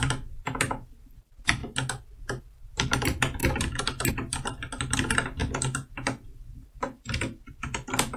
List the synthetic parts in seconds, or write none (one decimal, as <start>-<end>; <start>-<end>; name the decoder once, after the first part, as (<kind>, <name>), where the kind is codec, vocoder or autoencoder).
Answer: 0.0-1.6 (vocoder, BigVGAN v2); 2.4-3.4; 4.1-8.2